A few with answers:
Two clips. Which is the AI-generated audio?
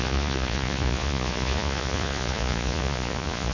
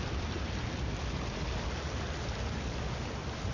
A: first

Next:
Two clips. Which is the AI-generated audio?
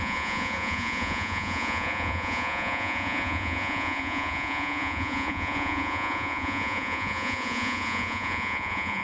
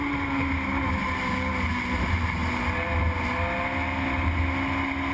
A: first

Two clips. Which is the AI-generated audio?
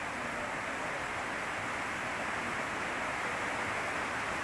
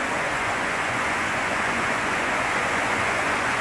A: second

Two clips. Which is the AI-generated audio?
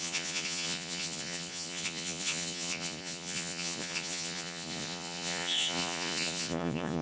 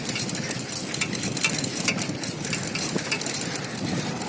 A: first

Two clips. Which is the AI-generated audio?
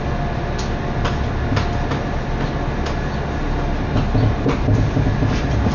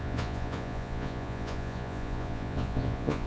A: second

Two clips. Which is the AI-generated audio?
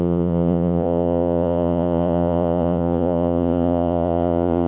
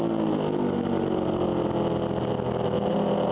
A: first